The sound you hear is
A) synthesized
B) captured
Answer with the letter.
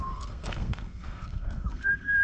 A